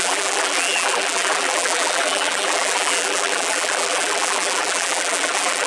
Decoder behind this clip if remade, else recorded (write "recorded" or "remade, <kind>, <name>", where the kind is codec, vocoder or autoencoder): remade, vocoder, BigVGAN v2